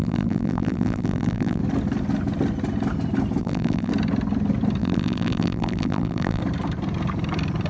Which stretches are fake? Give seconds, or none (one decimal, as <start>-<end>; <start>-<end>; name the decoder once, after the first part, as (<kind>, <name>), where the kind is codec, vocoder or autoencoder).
0.0-1.6 (vocoder, BigVGAN v2); 3.4-3.9; 4.8-6.4